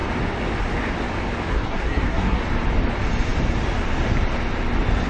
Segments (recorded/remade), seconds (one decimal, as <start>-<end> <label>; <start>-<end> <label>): 0.0-1.5 recorded; 1.5-2.4 remade; 2.4-5.1 recorded